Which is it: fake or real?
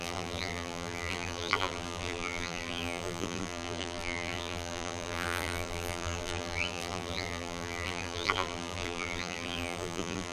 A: fake